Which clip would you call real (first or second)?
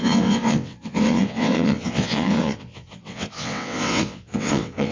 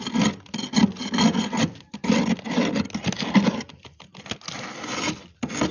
second